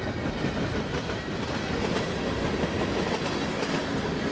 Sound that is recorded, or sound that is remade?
recorded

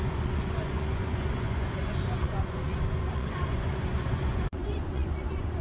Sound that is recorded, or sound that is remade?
remade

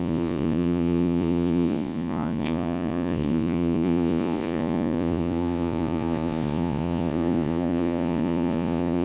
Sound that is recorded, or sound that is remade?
remade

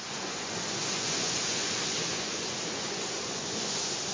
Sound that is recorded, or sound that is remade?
remade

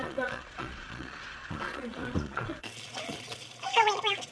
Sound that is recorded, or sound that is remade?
remade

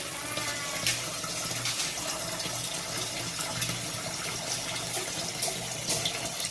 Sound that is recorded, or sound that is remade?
recorded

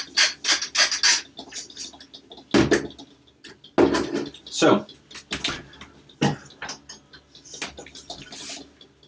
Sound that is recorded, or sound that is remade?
recorded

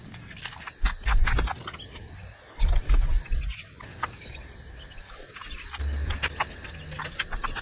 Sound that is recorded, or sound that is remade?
recorded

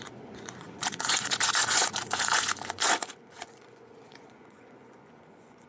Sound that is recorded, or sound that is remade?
remade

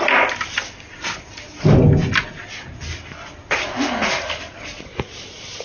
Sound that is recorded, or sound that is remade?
recorded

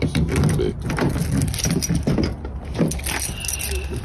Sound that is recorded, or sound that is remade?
recorded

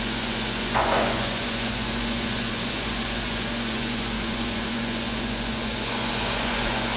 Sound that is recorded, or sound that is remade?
remade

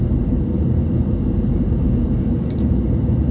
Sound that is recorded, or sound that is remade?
recorded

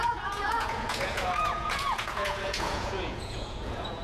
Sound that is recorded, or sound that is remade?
remade